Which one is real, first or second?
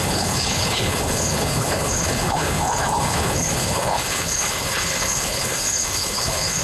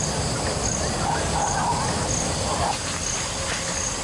second